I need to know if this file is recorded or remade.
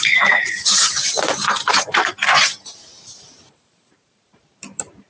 remade